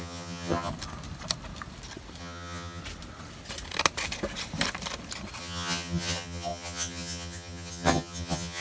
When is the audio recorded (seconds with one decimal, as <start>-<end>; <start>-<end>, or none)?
0.7-2.2; 2.8-5.4